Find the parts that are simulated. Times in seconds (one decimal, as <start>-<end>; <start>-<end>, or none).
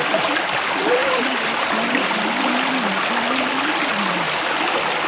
1.0-2.7